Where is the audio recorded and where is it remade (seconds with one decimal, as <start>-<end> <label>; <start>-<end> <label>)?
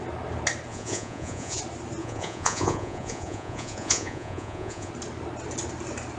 0.0-0.7 recorded; 0.7-1.6 remade; 1.6-2.0 recorded; 2.0-4.9 remade; 4.9-6.2 recorded